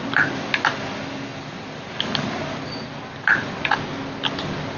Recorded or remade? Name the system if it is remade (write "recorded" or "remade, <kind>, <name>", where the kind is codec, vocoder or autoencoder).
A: recorded